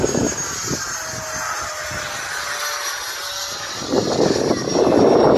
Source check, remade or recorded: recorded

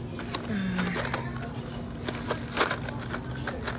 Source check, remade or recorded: recorded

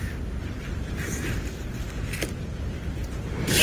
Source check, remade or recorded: recorded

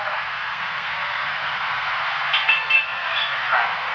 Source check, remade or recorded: remade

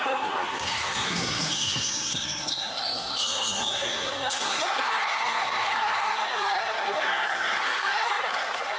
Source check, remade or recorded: remade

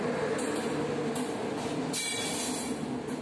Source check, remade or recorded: recorded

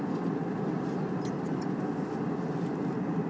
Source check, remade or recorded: recorded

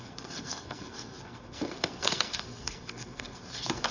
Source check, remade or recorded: remade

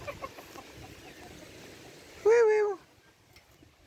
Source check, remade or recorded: recorded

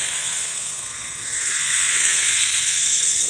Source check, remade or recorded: remade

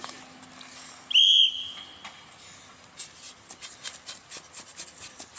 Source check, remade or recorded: recorded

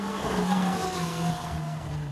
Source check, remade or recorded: remade